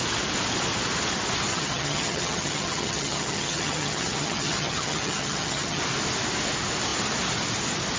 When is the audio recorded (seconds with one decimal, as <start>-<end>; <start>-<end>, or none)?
0.0-1.5; 5.8-8.0